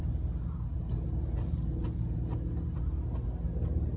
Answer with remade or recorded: recorded